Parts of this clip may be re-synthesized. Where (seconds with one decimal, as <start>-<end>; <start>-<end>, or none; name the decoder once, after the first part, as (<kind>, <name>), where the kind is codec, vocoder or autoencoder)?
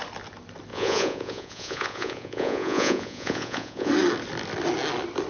0.7-3.9 (vocoder, Vocos)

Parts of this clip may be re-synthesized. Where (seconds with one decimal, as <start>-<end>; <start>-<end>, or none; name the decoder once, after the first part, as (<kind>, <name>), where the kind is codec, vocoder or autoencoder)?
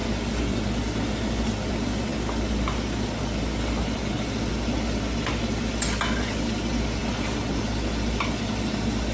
none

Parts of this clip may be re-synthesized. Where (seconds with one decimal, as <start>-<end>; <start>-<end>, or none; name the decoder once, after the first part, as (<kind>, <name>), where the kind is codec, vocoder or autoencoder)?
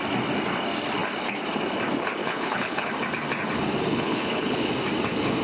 2.2-2.9 (codec, HILCodec); 3.9-4.7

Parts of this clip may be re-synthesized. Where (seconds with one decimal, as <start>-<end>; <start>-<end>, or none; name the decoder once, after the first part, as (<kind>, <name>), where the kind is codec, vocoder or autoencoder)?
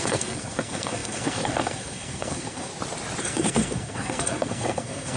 0.0-2.7 (codec, SNAC); 3.2-5.2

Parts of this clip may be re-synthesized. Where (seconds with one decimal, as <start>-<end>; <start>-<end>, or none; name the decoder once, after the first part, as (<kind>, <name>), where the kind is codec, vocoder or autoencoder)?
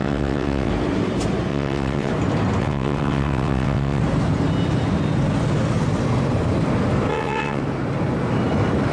0.0-0.7 (vocoder, WaveNeXt); 1.5-2.1; 2.6-4.0; 7.1-7.6